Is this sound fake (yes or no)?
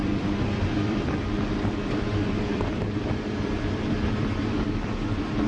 yes